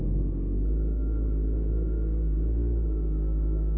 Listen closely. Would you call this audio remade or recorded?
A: remade